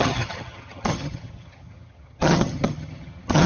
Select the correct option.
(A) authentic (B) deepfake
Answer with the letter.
B